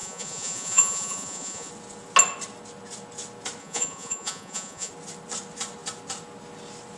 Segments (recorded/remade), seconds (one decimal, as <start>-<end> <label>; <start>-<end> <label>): 0.0-1.7 remade; 1.7-3.6 recorded; 3.6-4.9 remade; 4.9-7.0 recorded